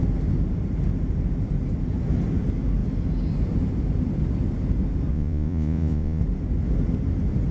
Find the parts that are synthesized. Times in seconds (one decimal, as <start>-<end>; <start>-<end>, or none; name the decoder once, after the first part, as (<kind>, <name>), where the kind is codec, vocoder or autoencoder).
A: 5.1-6.2 (vocoder, Vocos)